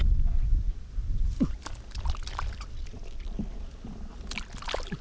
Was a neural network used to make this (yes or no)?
no